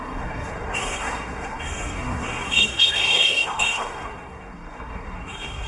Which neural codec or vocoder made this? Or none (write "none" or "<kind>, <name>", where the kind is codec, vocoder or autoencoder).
codec, SNAC